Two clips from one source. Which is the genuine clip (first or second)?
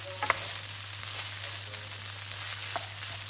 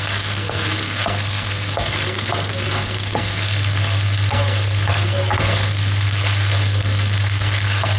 first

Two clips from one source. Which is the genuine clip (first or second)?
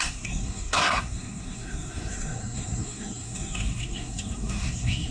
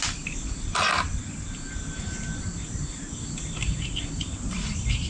second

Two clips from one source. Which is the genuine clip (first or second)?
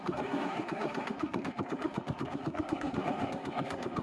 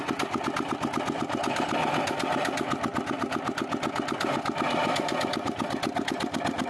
second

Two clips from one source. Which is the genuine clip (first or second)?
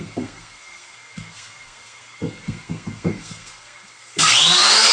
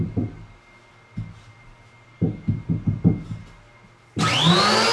second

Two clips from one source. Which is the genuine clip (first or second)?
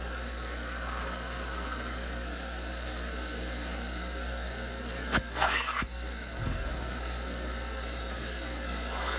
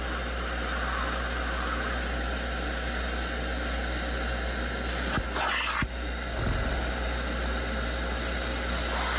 second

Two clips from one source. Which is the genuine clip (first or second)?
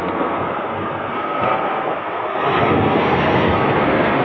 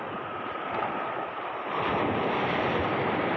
second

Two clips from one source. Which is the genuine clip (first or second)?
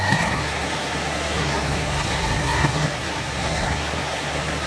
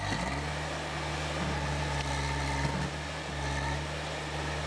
second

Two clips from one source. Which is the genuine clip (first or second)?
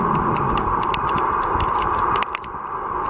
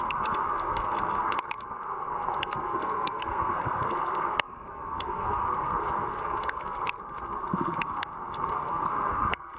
first